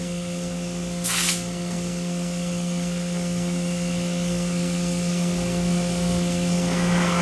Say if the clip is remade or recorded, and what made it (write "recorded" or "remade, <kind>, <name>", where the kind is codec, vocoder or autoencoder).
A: remade, codec, SNAC